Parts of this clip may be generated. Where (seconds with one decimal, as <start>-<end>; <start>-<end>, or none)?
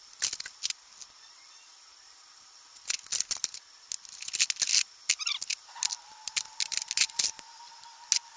none